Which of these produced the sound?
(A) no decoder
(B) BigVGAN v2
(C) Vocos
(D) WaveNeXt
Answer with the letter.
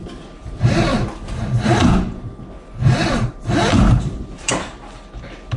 B